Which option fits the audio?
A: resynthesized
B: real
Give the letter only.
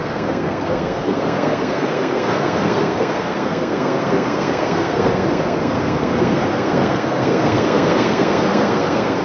A